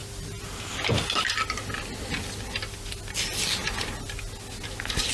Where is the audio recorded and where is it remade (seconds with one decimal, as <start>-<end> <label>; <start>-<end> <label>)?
0.0-5.1 recorded